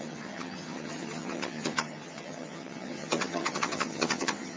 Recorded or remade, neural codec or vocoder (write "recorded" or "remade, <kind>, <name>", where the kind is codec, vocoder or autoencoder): remade, vocoder, HiFi-GAN